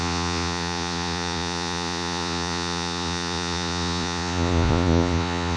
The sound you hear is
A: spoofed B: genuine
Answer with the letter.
A